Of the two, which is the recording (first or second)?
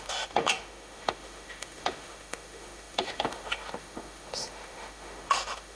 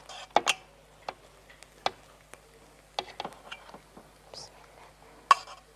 second